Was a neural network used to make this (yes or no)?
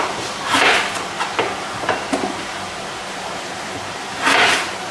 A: yes